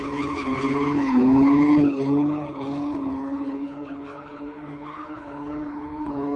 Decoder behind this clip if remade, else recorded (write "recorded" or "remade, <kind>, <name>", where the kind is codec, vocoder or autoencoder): remade, codec, HILCodec